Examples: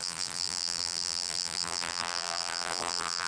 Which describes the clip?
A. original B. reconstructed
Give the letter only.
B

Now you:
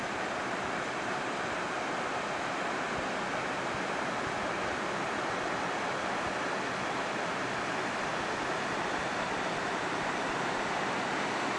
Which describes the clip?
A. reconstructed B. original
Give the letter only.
B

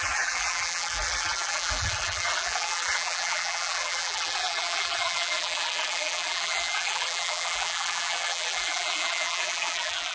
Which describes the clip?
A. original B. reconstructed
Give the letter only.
B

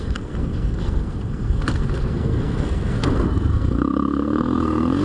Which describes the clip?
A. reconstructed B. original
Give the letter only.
A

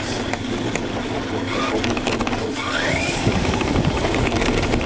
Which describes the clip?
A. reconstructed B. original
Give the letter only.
A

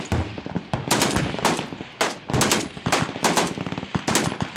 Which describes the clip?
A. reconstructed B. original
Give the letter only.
B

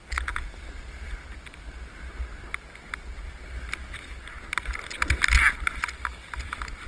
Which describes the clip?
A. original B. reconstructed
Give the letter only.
A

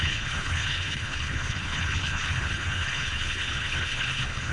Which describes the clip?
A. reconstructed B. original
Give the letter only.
A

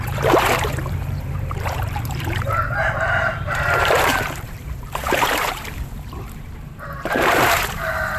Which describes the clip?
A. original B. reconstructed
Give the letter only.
B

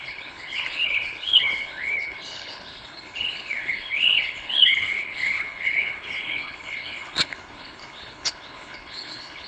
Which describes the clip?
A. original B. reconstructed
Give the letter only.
B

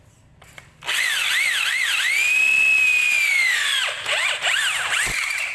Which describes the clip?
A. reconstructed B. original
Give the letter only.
B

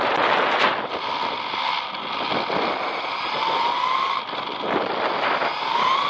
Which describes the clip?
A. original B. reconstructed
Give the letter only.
A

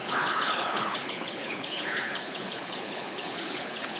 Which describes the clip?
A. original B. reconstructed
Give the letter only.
B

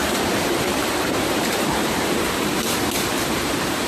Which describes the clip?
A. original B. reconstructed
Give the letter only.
B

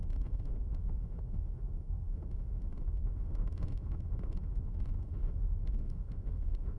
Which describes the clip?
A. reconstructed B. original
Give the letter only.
A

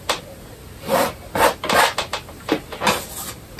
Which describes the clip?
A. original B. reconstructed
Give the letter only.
A